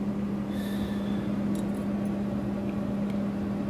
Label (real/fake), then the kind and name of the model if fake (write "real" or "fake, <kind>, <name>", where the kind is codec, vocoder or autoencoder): real